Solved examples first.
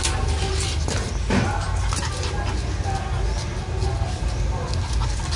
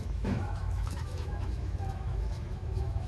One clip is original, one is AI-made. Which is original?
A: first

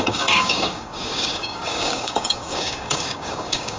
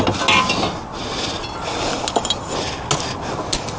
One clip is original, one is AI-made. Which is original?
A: second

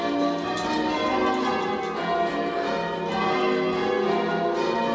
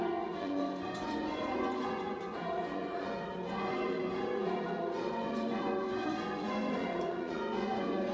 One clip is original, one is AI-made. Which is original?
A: first